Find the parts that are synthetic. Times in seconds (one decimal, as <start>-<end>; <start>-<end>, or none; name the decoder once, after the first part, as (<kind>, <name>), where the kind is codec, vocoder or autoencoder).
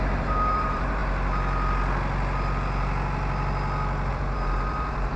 0.0-1.0 (vocoder, BigVGAN v2); 4.1-5.2